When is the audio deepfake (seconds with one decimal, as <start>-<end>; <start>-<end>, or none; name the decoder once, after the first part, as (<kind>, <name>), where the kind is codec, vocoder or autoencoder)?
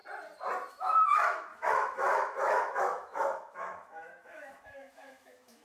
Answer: 0.7-5.6 (autoencoder, DAC-VAE)